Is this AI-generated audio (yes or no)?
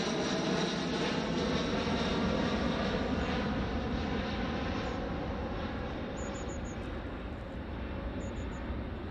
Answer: no